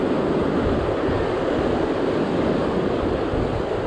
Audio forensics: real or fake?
real